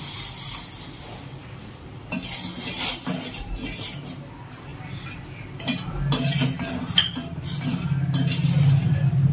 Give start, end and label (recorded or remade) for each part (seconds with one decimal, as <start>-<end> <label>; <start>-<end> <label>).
0.0-9.3 recorded